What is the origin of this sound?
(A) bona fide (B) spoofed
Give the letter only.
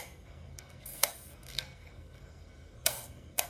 B